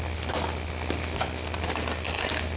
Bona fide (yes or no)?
yes